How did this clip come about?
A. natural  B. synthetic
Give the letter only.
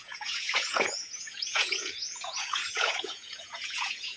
B